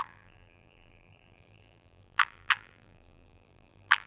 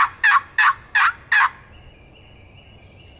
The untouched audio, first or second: second